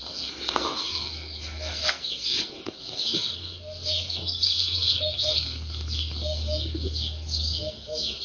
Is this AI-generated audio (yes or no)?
yes